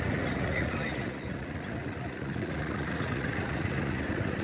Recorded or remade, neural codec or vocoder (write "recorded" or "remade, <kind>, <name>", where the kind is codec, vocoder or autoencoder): remade, vocoder, Vocos